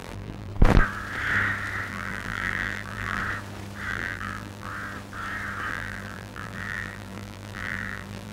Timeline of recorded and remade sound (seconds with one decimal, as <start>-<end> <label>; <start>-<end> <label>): 0.0-0.5 remade; 0.5-1.9 recorded; 1.9-3.2 remade; 3.2-3.9 recorded; 3.9-4.7 remade; 4.7-5.7 recorded; 5.7-8.3 remade